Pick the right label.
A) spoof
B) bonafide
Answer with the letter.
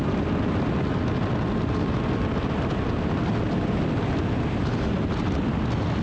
B